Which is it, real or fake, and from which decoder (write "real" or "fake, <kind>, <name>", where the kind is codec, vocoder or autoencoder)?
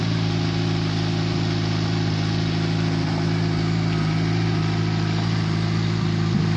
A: real